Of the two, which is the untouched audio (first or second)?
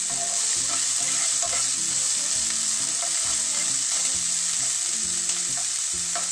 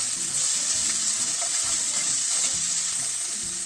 first